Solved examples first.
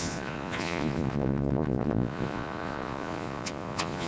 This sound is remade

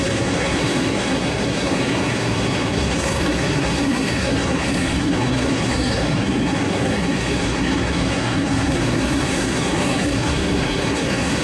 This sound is remade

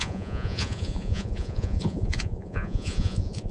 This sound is remade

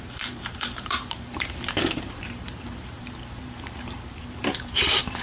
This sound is remade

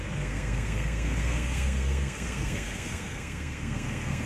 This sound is remade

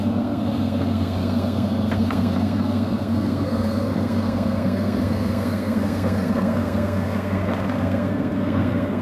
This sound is remade